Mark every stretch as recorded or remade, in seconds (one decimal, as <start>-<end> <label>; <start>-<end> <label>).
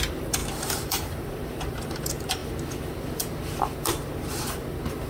0.0-5.1 remade